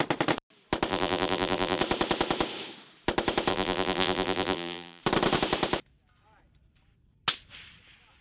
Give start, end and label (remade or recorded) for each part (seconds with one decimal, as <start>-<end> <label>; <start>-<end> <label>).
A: 0.0-0.9 recorded; 0.9-1.8 remade; 1.8-3.5 recorded; 3.5-5.0 remade; 5.0-8.2 recorded